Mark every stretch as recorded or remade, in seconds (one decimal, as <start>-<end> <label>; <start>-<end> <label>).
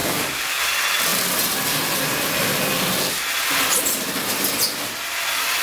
0.0-0.6 remade; 0.6-5.6 recorded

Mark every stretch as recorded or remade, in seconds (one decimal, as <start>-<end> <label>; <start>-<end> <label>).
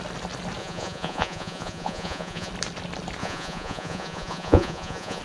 0.0-0.6 recorded; 0.6-2.5 remade; 2.5-3.2 recorded; 3.2-5.2 remade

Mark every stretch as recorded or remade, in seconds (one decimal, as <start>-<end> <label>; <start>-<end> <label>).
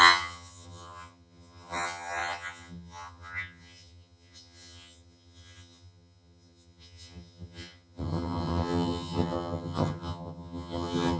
0.0-11.2 remade